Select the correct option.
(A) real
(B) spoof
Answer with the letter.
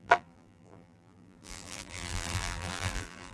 B